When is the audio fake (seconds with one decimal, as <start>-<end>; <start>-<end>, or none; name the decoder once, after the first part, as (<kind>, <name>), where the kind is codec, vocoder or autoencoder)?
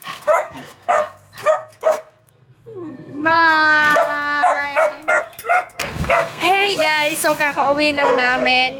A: 0.0-8.8 (codec, SNAC)